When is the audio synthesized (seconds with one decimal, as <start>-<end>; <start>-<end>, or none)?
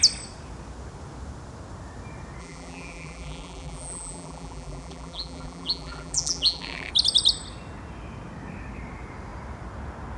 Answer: 2.4-6.9